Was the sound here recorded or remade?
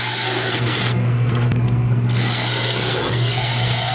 remade